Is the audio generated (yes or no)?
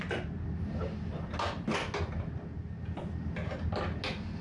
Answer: no